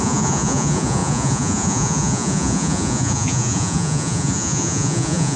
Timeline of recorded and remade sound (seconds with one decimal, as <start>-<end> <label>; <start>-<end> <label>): 0.0-5.4 remade